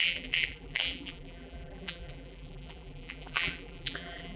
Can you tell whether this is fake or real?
fake